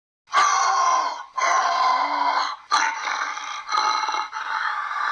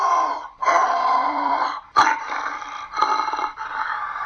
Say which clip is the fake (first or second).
second